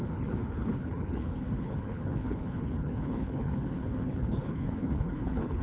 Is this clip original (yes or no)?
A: no